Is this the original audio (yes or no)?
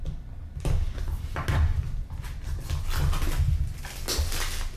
yes